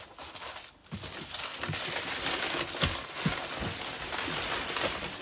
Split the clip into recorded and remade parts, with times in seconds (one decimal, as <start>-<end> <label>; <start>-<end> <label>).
0.0-0.8 recorded; 0.8-2.4 remade; 2.4-5.2 recorded